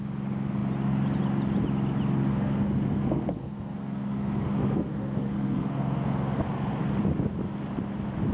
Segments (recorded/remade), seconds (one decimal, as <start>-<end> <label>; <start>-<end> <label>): 0.0-2.3 recorded; 2.3-6.9 remade; 6.9-8.3 recorded